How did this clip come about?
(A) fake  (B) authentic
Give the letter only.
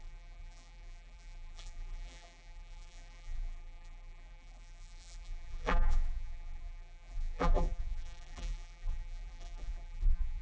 A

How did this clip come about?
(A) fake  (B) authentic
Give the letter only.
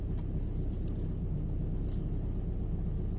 B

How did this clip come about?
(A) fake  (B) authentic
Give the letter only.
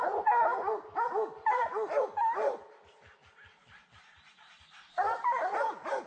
B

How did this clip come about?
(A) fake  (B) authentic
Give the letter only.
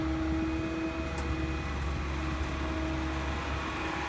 B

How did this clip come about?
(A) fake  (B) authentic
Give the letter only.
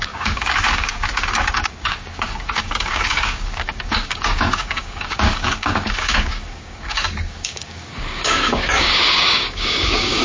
A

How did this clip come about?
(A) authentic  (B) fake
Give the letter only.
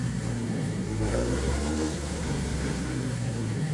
B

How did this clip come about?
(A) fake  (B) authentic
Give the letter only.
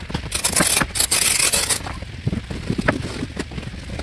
B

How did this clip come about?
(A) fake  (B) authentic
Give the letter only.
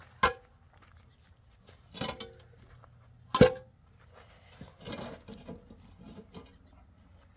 B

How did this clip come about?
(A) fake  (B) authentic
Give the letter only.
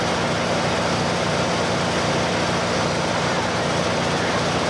B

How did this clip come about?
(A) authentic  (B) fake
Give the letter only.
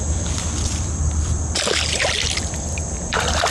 B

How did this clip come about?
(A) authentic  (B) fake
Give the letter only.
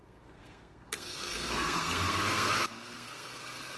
B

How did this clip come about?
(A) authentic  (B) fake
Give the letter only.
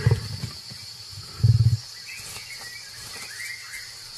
A